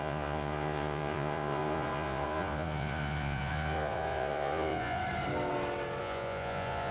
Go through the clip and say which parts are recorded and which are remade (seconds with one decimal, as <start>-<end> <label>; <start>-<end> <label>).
0.0-5.0 remade; 5.0-6.0 recorded; 6.0-6.9 remade